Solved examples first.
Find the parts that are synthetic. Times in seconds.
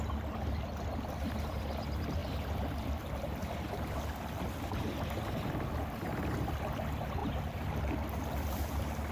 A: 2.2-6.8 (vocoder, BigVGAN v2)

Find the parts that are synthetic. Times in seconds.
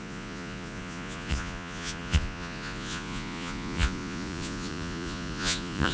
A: 0.0-5.9 (vocoder, Vocos)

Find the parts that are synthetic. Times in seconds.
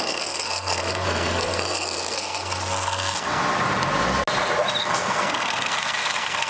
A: 0.0-3.4 (codec, SNAC); 4.8-6.5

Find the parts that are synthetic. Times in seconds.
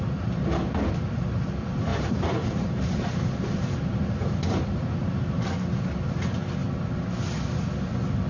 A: 1.9-5.5 (vocoder, BigVGAN v2)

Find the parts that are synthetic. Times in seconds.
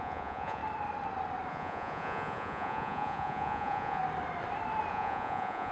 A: 0.0-0.6 (vocoder, Vocos); 1.5-4.0; 4.9-5.7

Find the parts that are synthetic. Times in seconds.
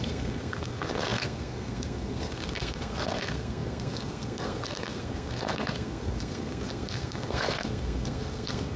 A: 0.0-8.8 (codec, SNAC)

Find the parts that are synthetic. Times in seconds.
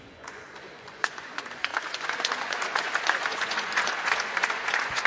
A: 0.0-5.1 (vocoder, Vocos)